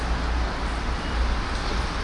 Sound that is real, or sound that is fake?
real